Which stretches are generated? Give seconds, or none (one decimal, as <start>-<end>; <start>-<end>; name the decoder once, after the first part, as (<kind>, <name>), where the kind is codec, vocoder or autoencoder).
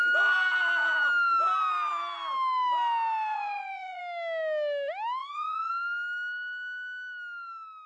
3.3-4.0 (vocoder, Vocos); 5.2-5.7